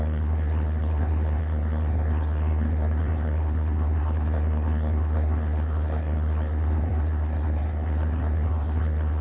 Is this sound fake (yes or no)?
yes